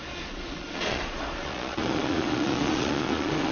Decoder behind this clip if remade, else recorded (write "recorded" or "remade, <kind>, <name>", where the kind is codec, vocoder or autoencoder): remade, vocoder, Vocos